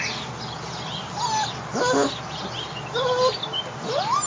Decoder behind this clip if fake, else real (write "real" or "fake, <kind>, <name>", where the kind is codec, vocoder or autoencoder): real